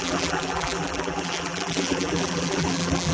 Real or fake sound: fake